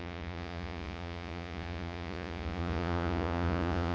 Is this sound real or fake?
fake